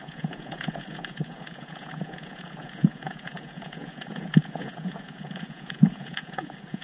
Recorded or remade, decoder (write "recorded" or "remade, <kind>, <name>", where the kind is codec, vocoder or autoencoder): remade, vocoder, Vocos